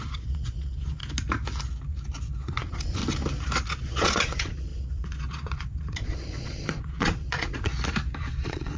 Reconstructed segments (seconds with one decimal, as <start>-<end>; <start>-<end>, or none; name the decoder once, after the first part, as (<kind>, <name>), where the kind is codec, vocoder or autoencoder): 0.0-1.0 (vocoder, Vocos); 2.4-3.0; 3.7-7.7; 8.3-8.8